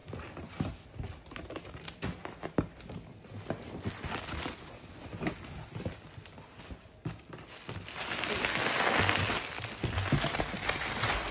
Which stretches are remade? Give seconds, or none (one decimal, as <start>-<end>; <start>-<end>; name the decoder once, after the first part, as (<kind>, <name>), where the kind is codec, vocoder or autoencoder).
none